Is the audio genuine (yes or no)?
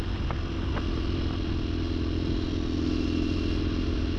yes